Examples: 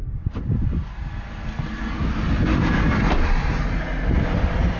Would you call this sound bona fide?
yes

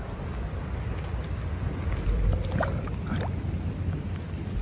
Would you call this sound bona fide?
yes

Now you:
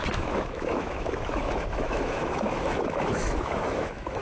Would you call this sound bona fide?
no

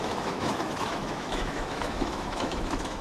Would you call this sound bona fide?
no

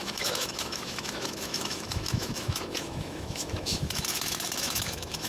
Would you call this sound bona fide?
no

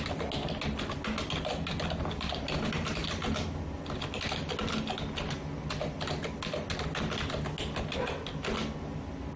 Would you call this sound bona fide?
yes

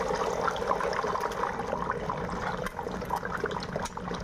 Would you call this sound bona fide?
yes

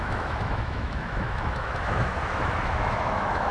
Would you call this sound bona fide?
no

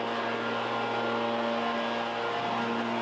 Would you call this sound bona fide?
yes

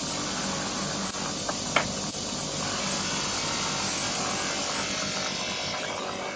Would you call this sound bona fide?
yes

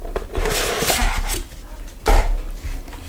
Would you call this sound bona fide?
yes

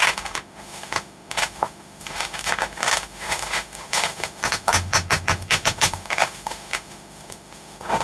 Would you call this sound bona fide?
no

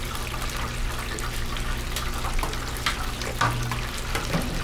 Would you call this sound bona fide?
yes